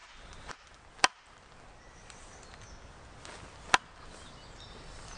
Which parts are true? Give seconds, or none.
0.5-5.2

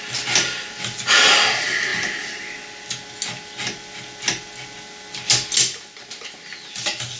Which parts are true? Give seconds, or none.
0.0-7.2

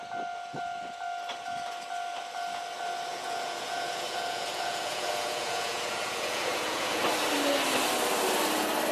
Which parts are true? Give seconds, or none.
0.0-3.1; 7.0-8.9